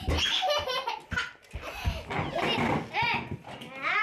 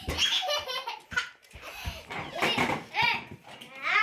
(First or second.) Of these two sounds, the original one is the first